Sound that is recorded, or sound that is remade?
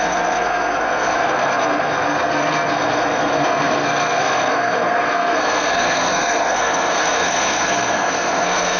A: remade